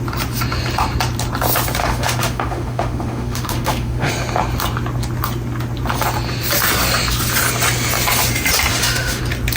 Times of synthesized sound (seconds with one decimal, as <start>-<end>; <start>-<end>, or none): 1.8-4.1; 8.7-9.2